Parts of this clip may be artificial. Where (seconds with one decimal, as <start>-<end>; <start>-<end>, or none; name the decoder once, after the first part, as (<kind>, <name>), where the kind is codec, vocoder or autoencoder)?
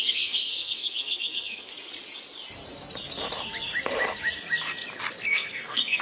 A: 0.0-1.7 (codec, SNAC); 5.3-6.0